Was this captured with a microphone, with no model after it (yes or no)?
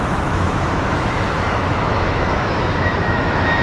no